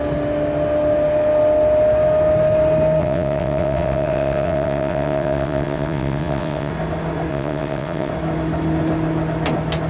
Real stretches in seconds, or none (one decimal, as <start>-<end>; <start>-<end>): 0.0-3.0; 6.7-7.3; 8.1-9.9